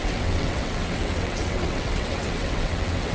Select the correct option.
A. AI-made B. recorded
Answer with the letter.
A